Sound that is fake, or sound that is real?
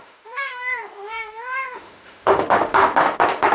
fake